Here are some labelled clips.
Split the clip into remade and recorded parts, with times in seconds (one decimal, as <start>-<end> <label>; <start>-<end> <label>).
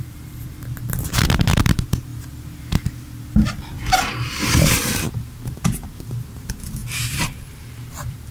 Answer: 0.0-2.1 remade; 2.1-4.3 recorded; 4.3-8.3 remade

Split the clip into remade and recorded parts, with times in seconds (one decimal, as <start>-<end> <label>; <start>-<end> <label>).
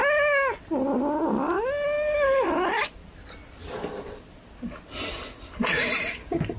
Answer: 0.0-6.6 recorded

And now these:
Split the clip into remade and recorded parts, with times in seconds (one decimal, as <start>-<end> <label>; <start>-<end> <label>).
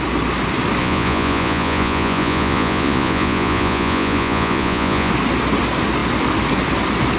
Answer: 0.0-0.8 recorded; 0.8-5.1 remade; 5.1-7.2 recorded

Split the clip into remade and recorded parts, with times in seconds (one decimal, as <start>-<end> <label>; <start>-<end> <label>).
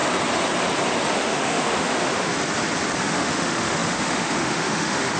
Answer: 0.0-1.1 recorded; 1.1-2.3 remade; 2.3-3.0 recorded; 3.0-5.2 remade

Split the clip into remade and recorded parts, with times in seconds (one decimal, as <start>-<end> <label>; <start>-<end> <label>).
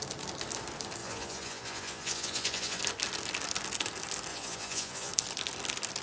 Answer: 0.0-1.0 recorded; 1.0-2.8 remade; 2.8-4.3 recorded; 4.3-5.1 remade; 5.1-6.0 recorded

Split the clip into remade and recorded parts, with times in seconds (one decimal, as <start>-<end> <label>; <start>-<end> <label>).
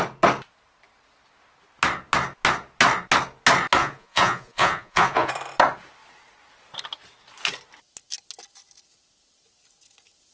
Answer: 0.0-3.8 recorded; 3.8-5.3 remade; 5.3-10.3 recorded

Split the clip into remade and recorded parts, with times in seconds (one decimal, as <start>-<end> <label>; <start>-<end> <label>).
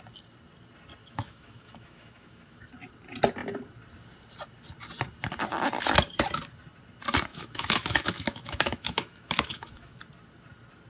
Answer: 0.0-1.0 recorded; 1.0-2.7 remade; 2.7-7.3 recorded; 7.3-10.0 remade; 10.0-10.9 recorded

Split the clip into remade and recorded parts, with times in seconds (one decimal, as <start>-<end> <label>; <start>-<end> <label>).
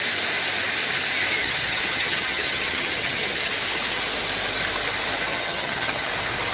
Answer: 0.0-1.4 recorded; 1.4-3.5 remade; 3.5-5.3 recorded; 5.3-6.1 remade; 6.1-6.5 recorded